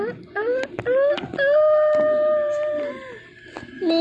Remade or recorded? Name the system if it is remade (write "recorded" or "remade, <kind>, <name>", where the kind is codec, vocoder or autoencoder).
recorded